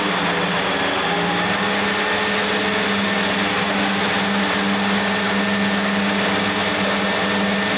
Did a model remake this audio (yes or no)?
no